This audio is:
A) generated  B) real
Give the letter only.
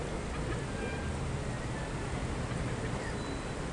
B